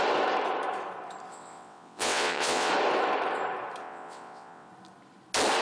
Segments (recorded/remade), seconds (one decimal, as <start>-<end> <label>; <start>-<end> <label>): 0.0-1.3 recorded; 1.3-2.7 remade; 2.7-3.8 recorded; 3.8-4.7 remade; 4.7-5.6 recorded